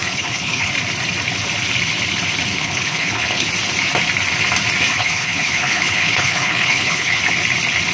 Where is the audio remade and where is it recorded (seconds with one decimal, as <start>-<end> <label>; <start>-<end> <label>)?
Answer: 0.0-0.7 remade; 0.7-2.5 recorded; 2.5-3.5 remade; 3.5-4.9 recorded; 4.9-7.2 remade; 7.2-7.9 recorded